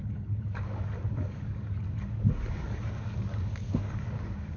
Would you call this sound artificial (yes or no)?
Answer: yes